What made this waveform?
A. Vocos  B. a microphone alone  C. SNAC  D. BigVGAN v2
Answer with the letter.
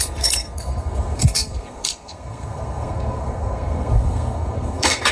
C